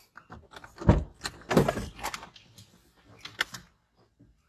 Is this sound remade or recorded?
recorded